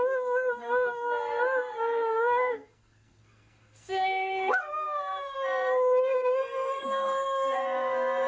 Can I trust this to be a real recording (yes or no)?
no